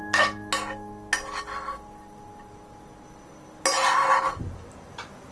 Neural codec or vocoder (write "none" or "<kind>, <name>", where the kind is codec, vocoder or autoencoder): none